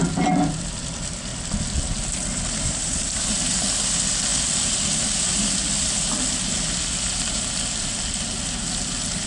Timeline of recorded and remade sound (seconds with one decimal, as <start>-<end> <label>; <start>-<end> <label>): 0.0-0.6 recorded; 0.6-1.3 remade; 1.3-2.1 recorded; 2.1-9.3 remade